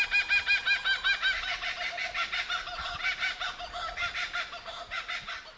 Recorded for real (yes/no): yes